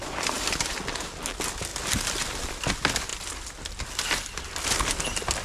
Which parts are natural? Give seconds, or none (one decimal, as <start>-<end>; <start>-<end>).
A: 0.0-5.4